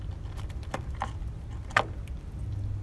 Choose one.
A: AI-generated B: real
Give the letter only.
A